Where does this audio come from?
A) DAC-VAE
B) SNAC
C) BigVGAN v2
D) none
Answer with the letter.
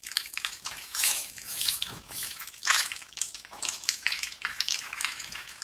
A